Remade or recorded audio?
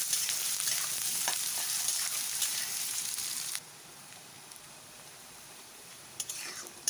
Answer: remade